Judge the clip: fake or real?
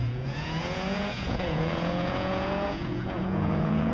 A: fake